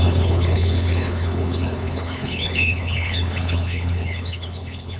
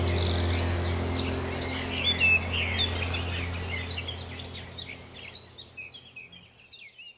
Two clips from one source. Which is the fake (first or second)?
first